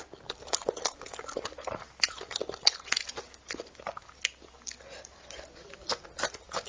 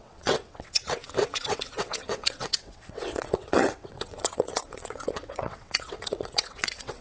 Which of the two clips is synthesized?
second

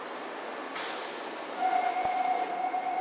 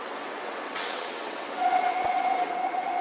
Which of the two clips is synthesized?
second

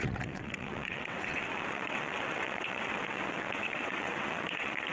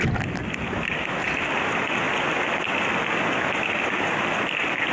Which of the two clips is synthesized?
first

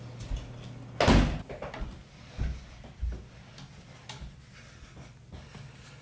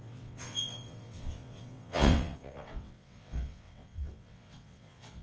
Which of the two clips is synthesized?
second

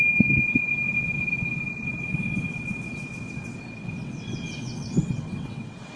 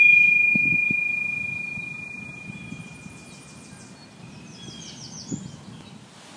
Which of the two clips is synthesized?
first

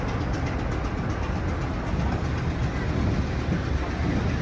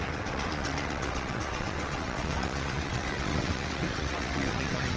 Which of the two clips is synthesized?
second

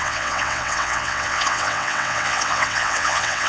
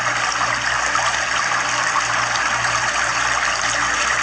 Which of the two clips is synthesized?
first